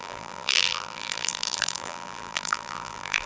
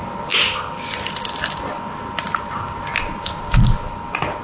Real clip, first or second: second